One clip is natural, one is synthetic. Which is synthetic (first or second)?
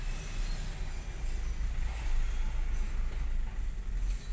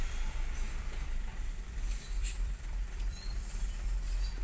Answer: second